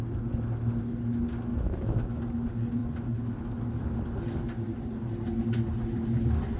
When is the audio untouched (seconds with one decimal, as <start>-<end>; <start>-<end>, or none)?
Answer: 0.0-1.5; 2.2-6.6

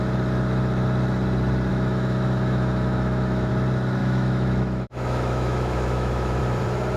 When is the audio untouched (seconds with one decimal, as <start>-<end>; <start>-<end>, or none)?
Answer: 0.0-1.7; 3.5-4.0; 6.4-7.0

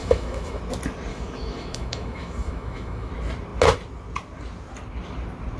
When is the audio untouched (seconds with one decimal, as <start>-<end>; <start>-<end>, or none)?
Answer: 0.6-1.1; 3.1-5.6

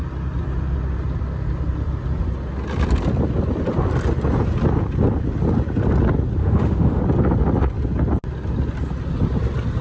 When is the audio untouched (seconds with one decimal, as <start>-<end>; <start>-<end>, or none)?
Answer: 0.0-6.4; 7.0-9.8

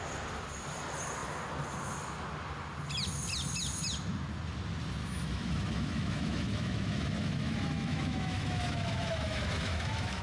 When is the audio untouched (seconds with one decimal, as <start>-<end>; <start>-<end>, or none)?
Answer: 0.0-5.0

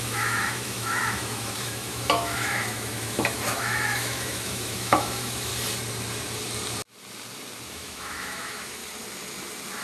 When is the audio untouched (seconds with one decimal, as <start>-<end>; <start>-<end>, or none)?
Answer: 5.5-7.7; 8.8-9.8

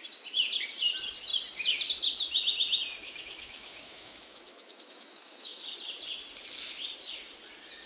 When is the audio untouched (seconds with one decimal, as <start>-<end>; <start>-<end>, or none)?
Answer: 0.0-3.0; 5.6-7.9